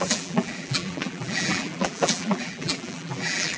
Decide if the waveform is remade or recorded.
remade